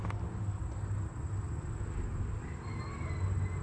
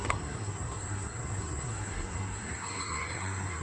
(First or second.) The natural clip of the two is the first